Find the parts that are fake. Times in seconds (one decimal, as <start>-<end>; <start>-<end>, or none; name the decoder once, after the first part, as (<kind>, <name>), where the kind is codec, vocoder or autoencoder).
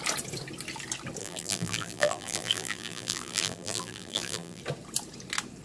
1.2-4.6 (vocoder, BigVGAN v2)